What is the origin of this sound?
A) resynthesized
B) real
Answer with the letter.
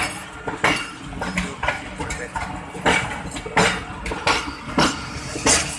B